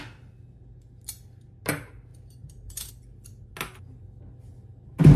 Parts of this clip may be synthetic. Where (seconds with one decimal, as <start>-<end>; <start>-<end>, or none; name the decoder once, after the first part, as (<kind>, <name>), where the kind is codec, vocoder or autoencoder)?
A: 2.1-2.9 (vocoder, BigVGAN v2)

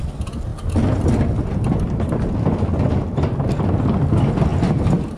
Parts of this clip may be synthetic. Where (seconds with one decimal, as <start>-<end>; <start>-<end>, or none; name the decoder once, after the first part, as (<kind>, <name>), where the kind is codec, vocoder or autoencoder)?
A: none

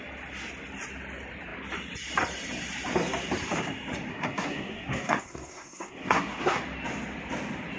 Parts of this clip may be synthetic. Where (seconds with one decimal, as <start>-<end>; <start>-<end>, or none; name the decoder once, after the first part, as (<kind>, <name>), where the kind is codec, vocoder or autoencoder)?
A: 4.1-6.6 (codec, SNAC)

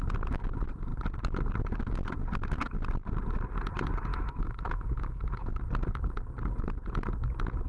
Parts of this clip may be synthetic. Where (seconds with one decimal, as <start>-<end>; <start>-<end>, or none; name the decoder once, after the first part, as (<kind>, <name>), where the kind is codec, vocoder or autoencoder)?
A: 4.1-5.6 (autoencoder, DAC-VAE)

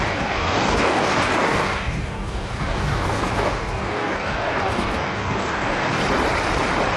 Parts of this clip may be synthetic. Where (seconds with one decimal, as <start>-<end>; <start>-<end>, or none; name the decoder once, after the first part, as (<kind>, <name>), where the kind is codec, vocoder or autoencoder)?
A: 0.0-6.0 (codec, DAC)

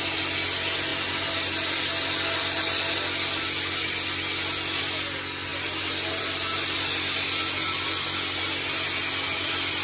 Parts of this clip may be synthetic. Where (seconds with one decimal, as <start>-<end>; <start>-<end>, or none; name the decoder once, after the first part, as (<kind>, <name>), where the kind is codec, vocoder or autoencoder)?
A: none